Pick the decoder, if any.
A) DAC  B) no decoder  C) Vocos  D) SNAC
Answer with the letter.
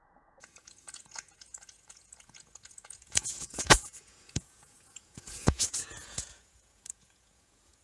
C